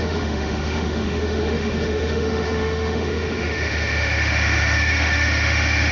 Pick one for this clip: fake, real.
fake